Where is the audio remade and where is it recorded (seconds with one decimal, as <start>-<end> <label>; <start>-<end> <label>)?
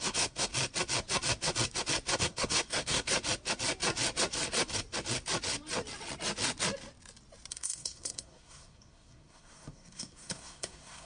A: 0.0-0.5 remade; 0.5-2.2 recorded; 2.2-3.1 remade; 3.1-7.5 recorded; 7.5-11.1 remade